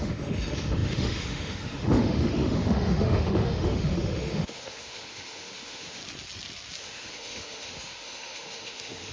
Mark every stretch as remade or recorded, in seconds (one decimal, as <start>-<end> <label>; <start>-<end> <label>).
0.0-6.0 remade; 6.0-6.8 recorded; 6.8-9.1 remade